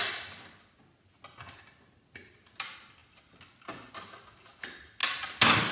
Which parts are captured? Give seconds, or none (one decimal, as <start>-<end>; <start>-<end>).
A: 0.0-5.7